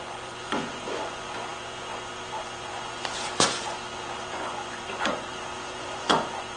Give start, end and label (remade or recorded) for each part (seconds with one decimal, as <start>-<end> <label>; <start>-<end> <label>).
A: 0.0-6.6 remade